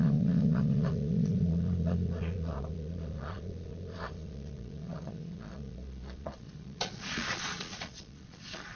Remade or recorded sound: remade